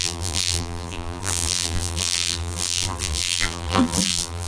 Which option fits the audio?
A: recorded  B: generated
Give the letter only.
B